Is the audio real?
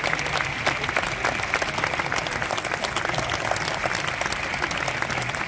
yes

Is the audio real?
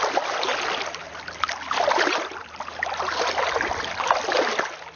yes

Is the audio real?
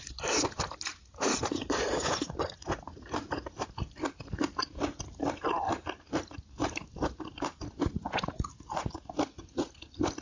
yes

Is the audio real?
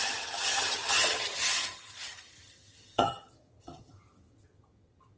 no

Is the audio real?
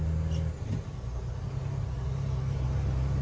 yes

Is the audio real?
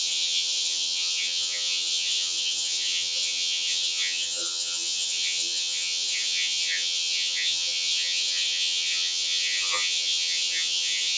no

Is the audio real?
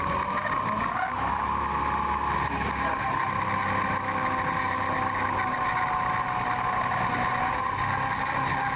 yes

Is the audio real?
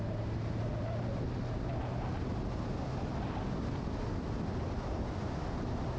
yes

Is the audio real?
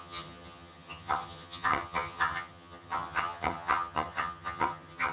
no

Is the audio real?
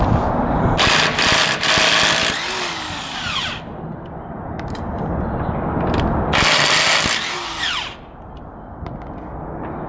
yes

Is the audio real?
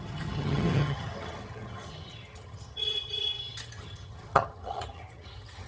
no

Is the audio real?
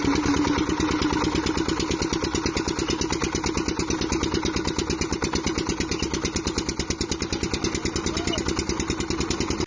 yes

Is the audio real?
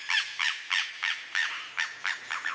yes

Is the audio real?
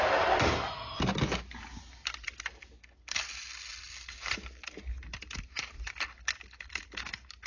yes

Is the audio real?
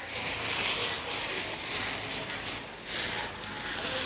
yes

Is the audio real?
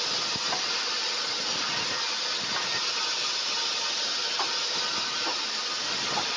yes